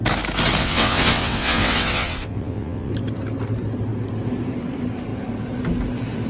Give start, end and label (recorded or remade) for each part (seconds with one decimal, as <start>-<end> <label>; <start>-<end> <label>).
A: 0.0-0.6 recorded; 0.6-2.9 remade; 2.9-6.3 recorded